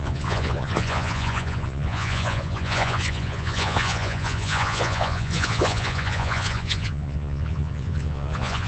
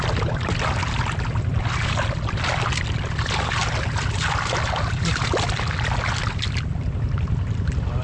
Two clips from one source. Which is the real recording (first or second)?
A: second